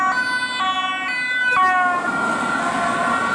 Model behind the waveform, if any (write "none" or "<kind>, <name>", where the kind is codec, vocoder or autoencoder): none